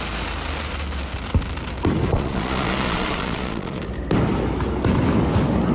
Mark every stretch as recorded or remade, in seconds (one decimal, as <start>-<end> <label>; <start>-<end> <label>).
0.0-2.1 recorded; 2.1-3.9 remade; 3.9-5.7 recorded